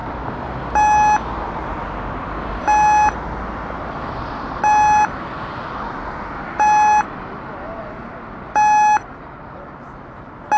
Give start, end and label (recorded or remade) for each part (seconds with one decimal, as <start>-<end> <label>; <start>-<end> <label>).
0.0-10.6 recorded